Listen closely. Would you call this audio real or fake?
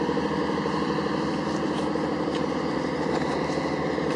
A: real